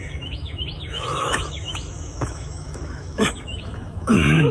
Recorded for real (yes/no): no